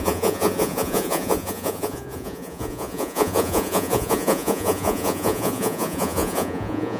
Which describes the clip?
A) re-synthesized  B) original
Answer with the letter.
A